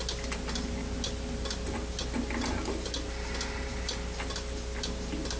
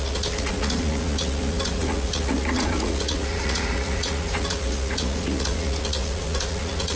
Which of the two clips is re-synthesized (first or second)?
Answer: second